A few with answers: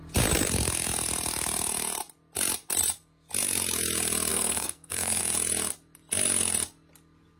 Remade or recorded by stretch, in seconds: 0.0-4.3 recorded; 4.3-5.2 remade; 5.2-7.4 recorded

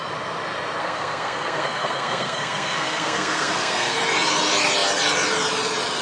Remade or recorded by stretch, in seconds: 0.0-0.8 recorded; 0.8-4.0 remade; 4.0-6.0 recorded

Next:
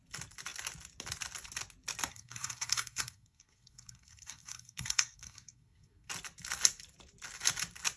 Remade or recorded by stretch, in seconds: 0.0-2.1 recorded; 2.1-6.1 remade; 6.1-8.0 recorded